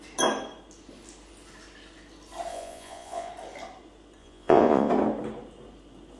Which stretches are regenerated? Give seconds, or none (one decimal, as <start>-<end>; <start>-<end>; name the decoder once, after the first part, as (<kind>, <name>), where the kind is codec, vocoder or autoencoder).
2.5-3.3 (vocoder, Vocos); 4.2-4.9